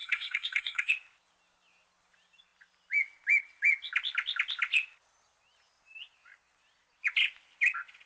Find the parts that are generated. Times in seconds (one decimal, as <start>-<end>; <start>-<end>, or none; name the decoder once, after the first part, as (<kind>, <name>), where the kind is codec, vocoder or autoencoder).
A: 0.0-0.9 (codec, SNAC)